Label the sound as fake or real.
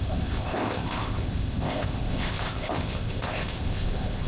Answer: fake